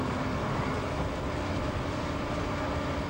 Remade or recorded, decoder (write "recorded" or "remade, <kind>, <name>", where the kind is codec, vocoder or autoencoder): recorded